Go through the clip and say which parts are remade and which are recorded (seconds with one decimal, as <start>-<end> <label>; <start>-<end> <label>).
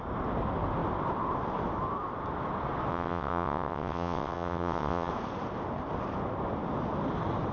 0.0-2.9 recorded; 2.9-5.1 remade; 5.1-7.5 recorded